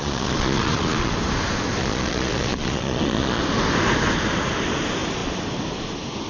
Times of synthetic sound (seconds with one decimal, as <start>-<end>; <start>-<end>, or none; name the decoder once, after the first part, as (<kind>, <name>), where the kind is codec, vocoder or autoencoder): 0.0-1.1 (vocoder, Vocos); 1.8-3.4